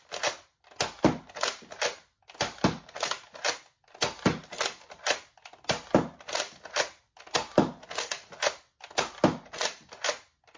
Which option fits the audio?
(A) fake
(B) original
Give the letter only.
B